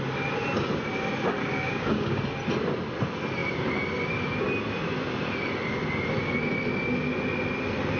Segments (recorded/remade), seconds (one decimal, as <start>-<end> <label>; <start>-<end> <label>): 0.0-1.4 recorded; 1.4-2.2 remade; 2.2-8.0 recorded